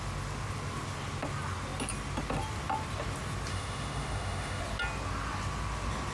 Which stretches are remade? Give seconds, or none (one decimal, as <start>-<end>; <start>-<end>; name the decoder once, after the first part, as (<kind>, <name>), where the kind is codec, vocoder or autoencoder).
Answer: 3.5-4.6 (autoencoder, DAC-VAE)